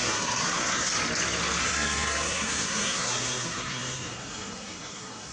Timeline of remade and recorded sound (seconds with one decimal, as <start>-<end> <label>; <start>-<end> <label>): 0.0-0.9 remade; 0.9-1.6 recorded; 1.6-5.3 remade